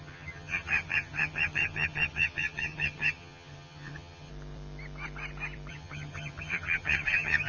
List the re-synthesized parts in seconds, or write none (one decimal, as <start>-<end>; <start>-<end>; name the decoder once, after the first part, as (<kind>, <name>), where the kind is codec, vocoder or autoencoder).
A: 0.0-4.3 (vocoder, HiFi-GAN); 5.7-7.5